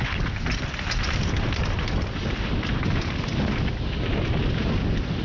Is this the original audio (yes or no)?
yes